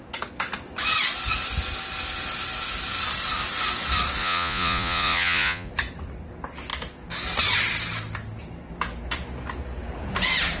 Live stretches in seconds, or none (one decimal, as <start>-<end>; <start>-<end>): 0.0-4.2; 5.7-10.6